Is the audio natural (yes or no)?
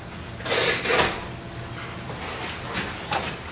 yes